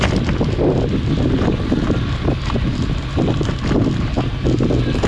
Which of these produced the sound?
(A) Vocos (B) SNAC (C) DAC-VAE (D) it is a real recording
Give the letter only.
D